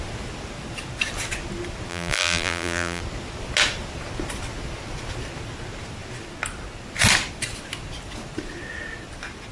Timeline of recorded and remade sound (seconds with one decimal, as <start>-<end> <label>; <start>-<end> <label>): 0.0-1.9 recorded; 1.9-3.0 remade; 3.0-9.5 recorded